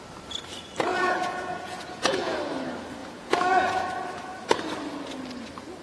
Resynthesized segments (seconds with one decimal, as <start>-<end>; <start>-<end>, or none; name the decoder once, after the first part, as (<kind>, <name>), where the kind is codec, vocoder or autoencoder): 0.9-2.4 (vocoder, Vocos); 3.0-3.8